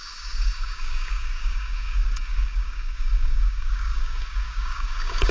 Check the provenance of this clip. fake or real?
fake